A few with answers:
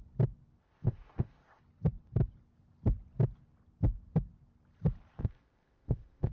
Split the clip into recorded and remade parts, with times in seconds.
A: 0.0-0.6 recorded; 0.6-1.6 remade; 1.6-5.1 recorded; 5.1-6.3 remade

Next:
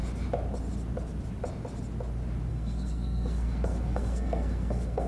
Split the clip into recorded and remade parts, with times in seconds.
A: 0.0-2.5 recorded; 2.5-5.1 remade

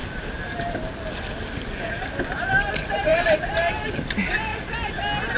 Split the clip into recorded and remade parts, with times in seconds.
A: 0.0-3.1 recorded; 3.1-3.7 remade; 3.7-4.5 recorded; 4.5-5.0 remade; 5.0-5.4 recorded

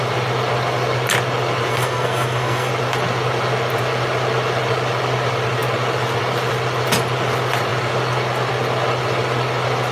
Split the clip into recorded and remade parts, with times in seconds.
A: 0.0-1.7 recorded; 1.7-2.7 remade; 2.7-9.9 recorded